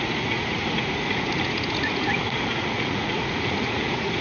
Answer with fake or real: fake